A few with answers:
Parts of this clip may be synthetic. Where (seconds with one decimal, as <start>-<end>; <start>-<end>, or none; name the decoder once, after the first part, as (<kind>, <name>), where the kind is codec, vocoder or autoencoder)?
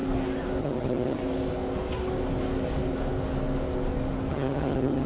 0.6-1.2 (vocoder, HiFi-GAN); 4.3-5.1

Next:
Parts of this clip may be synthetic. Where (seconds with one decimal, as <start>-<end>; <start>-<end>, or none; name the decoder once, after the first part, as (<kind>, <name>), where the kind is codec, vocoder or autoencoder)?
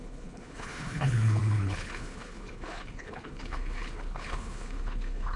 0.0-5.4 (codec, HILCodec)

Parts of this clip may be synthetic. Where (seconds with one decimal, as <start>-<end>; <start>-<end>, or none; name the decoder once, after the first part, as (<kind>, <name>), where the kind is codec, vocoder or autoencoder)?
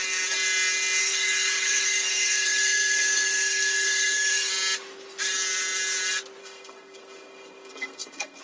1.0-4.5 (codec, SNAC); 6.4-8.4